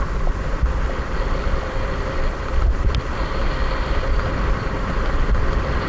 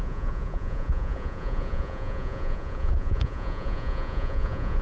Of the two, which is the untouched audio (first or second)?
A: first